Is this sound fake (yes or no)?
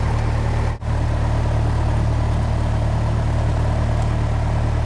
no